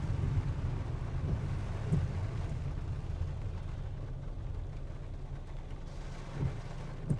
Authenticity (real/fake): real